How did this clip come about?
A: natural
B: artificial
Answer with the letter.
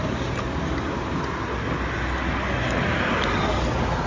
A